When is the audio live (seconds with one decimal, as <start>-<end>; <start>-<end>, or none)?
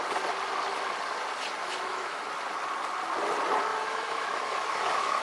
0.0-1.6; 2.2-3.7